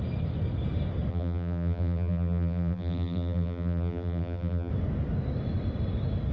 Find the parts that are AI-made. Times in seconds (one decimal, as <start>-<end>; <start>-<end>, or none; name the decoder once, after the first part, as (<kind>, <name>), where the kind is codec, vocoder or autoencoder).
1.1-4.7 (vocoder, BigVGAN v2)